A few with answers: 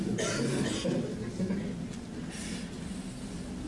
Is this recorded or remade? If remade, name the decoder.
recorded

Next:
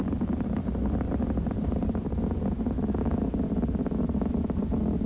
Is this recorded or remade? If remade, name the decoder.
recorded